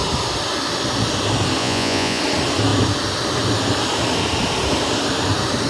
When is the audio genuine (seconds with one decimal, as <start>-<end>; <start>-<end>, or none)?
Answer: 0.0-1.6; 2.2-5.7